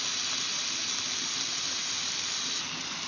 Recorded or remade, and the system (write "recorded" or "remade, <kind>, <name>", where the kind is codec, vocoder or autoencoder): recorded